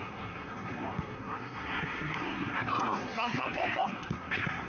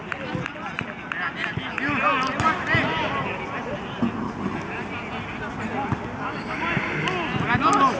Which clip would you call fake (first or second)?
first